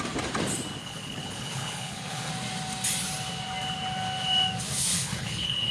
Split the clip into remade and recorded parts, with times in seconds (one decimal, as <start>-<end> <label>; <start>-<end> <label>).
0.0-0.8 recorded; 0.8-2.3 remade; 2.3-4.9 recorded; 4.9-5.7 remade